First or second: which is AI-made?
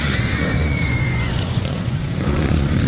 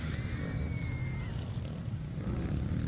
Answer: first